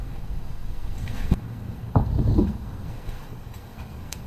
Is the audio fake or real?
fake